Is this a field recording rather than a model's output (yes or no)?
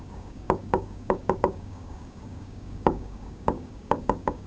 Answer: no